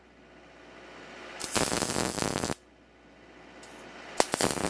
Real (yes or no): yes